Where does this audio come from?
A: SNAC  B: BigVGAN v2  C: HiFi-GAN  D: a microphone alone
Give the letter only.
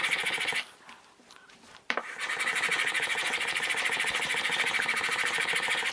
B